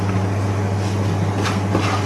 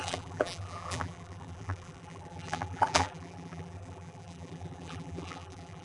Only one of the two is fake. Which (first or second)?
second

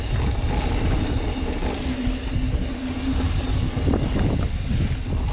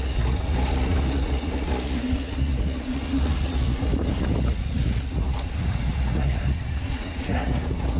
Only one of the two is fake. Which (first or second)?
second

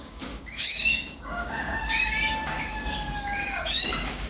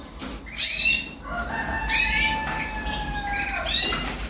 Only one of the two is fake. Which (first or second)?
first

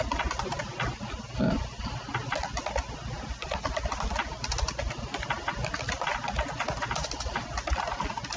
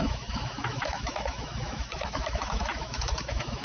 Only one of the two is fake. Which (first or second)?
second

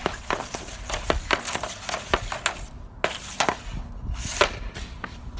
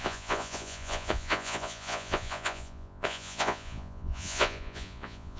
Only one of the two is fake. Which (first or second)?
second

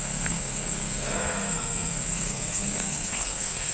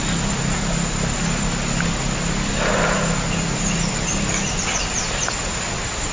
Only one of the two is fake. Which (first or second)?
first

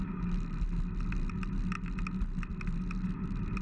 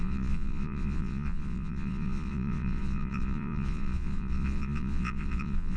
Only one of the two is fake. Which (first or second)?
second